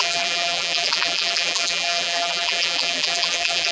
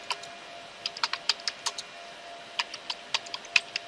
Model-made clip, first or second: first